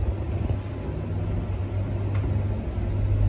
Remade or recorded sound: recorded